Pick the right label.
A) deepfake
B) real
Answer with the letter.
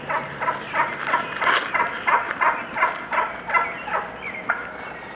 B